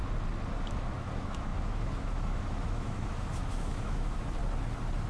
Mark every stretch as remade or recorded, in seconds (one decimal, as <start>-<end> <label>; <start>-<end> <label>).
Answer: 0.0-0.7 recorded; 0.7-4.4 remade; 4.4-5.1 recorded